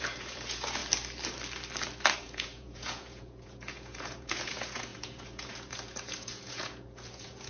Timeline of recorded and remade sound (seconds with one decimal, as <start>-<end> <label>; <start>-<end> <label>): 0.0-0.8 remade; 0.8-2.2 recorded; 2.2-7.5 remade